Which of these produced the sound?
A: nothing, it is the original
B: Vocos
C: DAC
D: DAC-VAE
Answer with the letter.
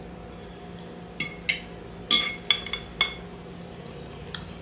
A